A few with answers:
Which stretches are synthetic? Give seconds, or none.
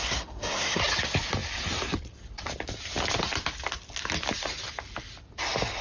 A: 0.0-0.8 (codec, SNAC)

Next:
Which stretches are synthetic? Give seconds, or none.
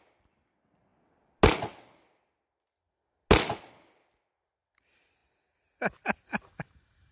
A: none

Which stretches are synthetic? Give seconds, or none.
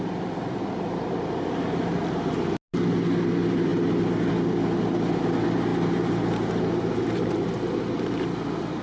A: none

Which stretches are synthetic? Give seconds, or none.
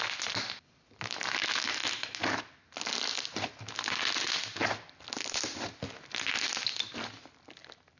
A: none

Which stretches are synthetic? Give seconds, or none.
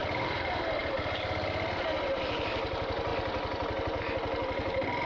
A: none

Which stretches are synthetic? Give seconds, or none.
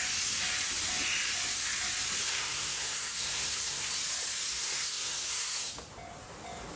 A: 2.2-4.0 (codec, SNAC); 4.5-5.7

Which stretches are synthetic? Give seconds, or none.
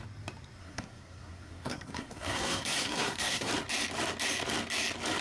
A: 0.6-3.5 (codec, SNAC)